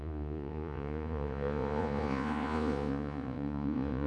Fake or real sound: fake